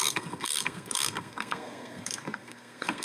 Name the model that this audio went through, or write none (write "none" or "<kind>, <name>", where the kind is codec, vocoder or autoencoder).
codec, SNAC